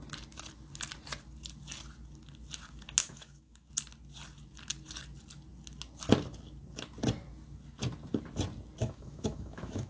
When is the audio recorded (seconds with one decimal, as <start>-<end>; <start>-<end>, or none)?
0.0-3.0; 3.7-8.8